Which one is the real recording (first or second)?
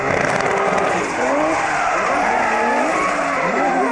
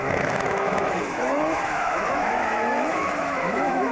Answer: first